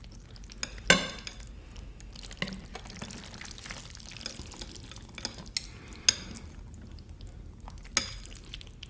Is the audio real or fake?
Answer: real